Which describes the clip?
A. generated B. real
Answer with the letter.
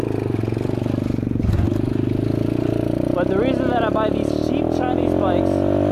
B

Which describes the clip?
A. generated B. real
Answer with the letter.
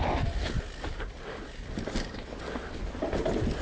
B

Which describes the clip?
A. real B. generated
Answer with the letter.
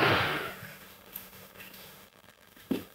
B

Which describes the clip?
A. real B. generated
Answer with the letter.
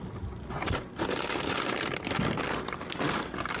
A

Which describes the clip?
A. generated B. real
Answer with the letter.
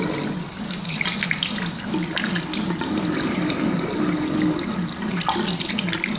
B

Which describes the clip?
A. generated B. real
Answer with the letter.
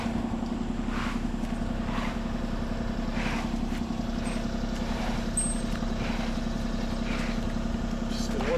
B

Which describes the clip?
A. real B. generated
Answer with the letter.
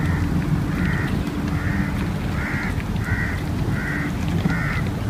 A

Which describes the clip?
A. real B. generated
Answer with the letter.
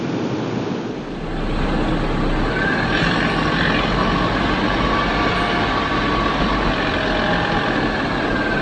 A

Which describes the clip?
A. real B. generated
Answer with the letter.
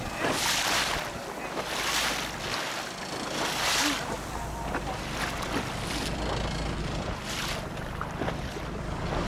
A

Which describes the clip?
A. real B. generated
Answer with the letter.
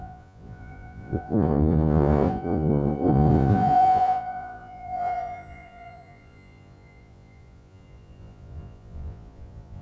B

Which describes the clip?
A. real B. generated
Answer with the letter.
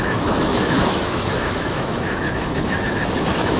B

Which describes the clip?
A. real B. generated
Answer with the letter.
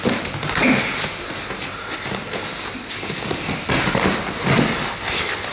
A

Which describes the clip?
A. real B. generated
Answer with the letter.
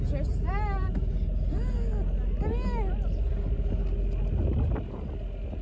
A